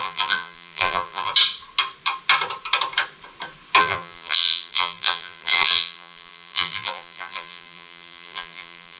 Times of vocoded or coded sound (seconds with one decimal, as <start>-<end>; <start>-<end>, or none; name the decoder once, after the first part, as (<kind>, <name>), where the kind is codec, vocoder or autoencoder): 0.0-1.3 (vocoder, BigVGAN v2); 3.8-9.0